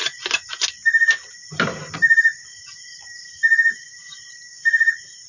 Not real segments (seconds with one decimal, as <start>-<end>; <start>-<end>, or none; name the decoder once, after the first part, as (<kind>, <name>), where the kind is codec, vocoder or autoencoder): 0.7-5.3 (vocoder, BigVGAN v2)